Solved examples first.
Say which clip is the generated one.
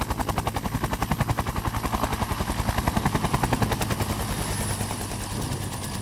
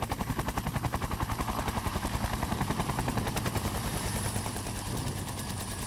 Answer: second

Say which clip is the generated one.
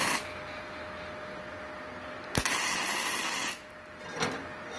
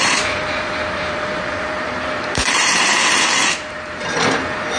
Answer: second